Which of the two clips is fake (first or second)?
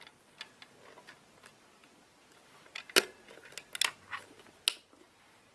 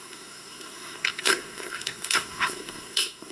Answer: second